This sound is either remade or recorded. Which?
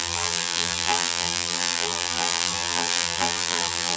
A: remade